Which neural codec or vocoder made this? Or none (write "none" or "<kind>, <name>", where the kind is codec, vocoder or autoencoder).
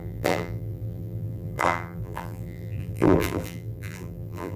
vocoder, BigVGAN v2